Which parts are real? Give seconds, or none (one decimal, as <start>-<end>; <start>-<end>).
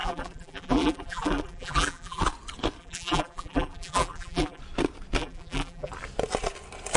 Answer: 2.2-2.8; 4.6-5.2; 5.9-7.0